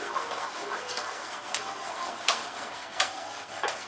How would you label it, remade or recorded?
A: remade